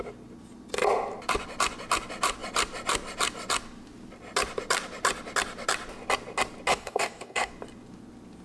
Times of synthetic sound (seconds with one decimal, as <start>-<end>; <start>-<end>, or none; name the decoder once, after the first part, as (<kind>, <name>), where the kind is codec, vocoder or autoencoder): 6.7-7.5 (codec, DAC)